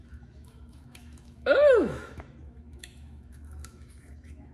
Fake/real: fake